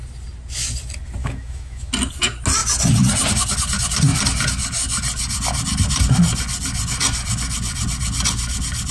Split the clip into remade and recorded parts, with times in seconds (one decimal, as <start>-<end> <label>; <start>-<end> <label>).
0.0-1.2 recorded; 1.2-1.9 remade; 1.9-8.9 recorded